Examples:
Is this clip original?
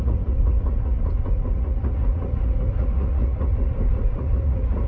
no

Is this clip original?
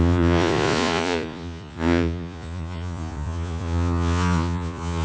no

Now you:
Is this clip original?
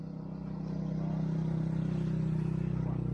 yes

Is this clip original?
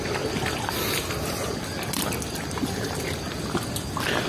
yes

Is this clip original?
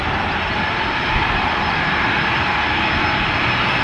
yes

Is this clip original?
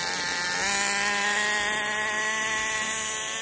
yes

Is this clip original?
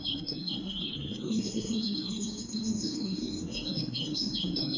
no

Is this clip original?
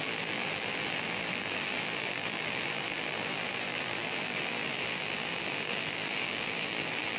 no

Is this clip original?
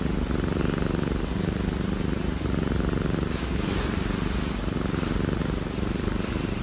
yes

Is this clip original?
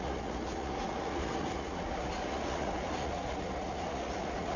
no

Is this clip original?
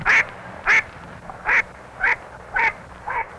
yes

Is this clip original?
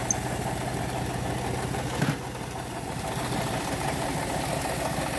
yes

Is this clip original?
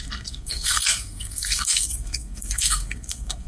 no